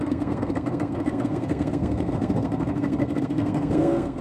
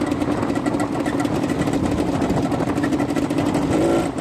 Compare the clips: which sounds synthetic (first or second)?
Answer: first